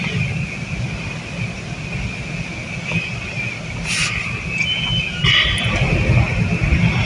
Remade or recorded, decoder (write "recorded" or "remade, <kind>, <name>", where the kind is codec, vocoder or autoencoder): recorded